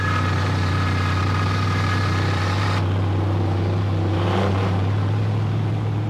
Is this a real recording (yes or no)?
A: no